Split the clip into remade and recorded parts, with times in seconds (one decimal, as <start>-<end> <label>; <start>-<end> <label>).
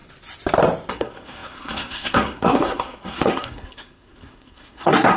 0.0-0.9 recorded; 0.9-5.2 remade